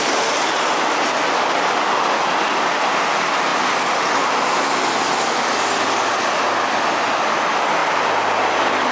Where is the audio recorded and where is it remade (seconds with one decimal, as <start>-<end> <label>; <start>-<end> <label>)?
0.0-8.9 recorded